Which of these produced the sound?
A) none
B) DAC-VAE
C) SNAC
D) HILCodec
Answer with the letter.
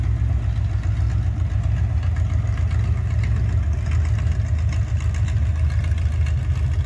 A